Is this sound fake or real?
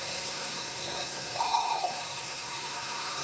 fake